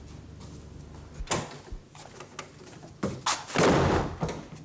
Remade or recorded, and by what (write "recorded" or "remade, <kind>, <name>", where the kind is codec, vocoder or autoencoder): recorded